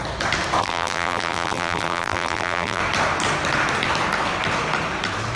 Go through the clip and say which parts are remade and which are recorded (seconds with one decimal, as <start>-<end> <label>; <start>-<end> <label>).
0.0-0.6 recorded; 0.6-2.8 remade; 2.8-5.4 recorded